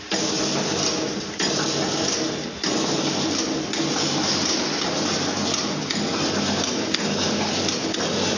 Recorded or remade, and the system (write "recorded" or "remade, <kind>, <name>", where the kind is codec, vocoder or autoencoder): recorded